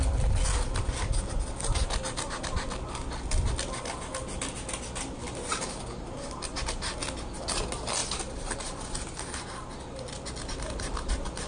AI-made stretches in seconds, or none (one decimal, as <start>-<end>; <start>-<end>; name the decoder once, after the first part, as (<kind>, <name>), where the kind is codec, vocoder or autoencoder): none